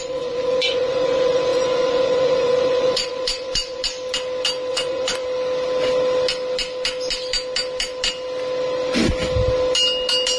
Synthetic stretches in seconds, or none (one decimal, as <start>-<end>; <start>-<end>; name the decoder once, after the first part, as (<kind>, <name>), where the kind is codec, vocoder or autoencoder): 0.0-3.8 (vocoder, Vocos); 4.7-5.2